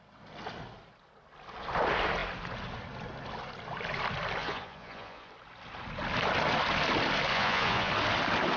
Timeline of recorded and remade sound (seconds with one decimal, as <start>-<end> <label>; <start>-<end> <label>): 0.0-4.4 recorded; 4.4-5.3 remade; 5.3-7.3 recorded; 7.3-7.9 remade; 7.9-8.6 recorded